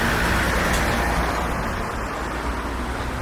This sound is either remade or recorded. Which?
recorded